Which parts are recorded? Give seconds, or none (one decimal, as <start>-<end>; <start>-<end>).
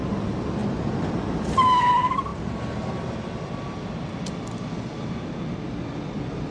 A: 0.0-6.5